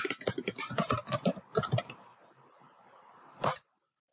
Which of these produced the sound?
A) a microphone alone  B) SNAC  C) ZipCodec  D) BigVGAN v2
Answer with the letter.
D